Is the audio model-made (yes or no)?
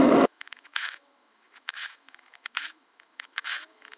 yes